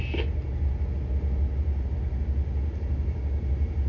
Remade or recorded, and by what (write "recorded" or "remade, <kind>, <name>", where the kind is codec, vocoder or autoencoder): recorded